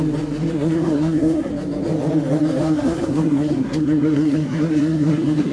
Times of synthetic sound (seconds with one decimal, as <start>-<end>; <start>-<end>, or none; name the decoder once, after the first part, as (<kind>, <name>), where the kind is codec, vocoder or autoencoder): 0.5-1.5 (codec, SNAC); 2.6-5.5